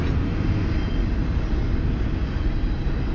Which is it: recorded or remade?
recorded